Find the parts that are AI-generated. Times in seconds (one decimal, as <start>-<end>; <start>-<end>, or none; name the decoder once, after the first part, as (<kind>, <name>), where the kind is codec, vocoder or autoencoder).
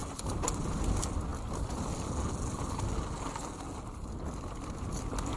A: none